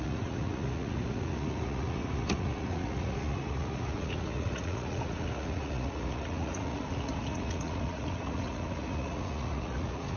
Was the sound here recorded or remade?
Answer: remade